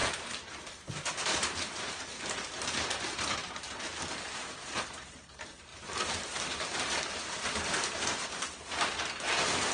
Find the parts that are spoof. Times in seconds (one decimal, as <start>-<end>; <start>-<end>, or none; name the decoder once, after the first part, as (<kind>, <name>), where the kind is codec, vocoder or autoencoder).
0.0-3.4 (vocoder, BigVGAN v2); 4.2-9.7